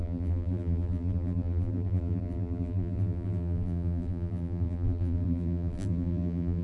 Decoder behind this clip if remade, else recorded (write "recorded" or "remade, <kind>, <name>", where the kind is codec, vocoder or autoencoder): remade, vocoder, BigVGAN v2